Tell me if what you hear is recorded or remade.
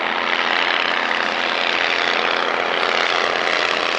recorded